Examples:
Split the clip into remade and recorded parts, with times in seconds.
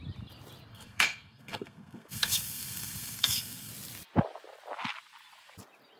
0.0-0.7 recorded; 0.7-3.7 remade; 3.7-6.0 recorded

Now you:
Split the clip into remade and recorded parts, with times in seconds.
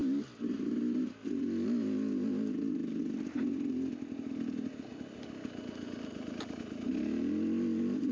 0.0-8.1 recorded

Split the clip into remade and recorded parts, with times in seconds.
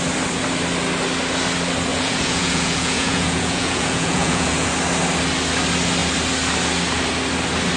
0.0-1.9 recorded; 1.9-4.7 remade; 4.7-7.8 recorded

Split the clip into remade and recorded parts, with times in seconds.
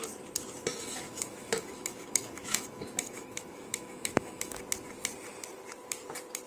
0.0-0.7 recorded; 0.7-4.6 remade; 4.6-6.5 recorded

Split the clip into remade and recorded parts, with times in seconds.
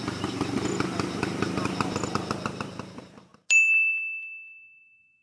0.0-5.2 recorded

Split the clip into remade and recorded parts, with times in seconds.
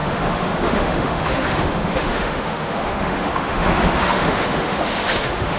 0.0-5.6 remade